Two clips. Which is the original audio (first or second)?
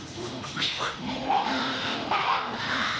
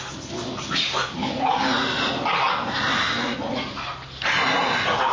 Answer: second